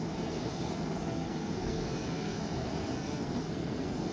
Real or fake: fake